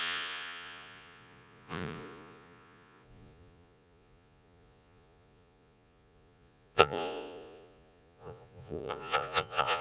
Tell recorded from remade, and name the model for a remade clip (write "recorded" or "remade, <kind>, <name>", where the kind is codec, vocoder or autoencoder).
remade, vocoder, Vocos